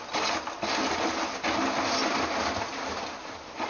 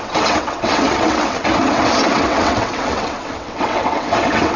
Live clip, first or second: first